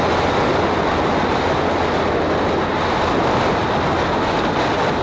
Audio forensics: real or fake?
real